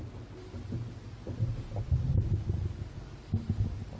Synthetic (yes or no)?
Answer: no